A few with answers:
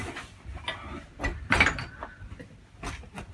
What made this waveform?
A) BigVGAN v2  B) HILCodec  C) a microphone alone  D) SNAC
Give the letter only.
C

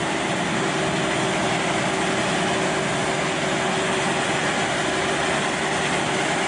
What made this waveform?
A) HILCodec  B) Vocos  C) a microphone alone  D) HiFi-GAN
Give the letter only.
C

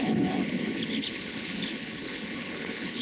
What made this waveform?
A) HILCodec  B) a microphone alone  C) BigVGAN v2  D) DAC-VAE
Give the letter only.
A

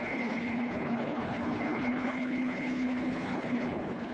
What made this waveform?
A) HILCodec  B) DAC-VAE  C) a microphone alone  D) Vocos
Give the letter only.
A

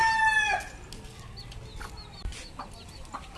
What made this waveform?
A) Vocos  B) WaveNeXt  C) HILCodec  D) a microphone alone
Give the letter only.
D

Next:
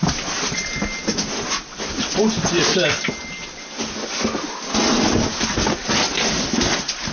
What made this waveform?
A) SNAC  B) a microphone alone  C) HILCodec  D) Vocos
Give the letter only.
B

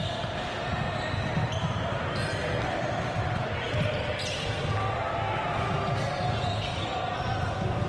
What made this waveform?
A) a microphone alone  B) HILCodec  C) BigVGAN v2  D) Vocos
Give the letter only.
A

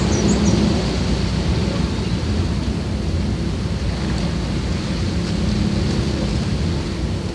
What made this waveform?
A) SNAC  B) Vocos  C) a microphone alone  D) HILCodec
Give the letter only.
C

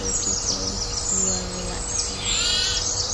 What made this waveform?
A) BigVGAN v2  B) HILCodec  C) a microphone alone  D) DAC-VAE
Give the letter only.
C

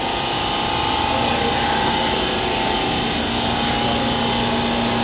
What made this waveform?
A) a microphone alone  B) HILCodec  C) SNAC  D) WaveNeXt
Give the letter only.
A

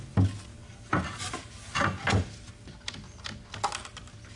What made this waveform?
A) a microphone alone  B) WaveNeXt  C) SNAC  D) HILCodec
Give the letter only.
A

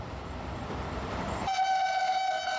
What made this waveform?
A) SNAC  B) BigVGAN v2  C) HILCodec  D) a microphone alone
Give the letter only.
D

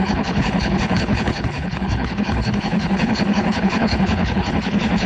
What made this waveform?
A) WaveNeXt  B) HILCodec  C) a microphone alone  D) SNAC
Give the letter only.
B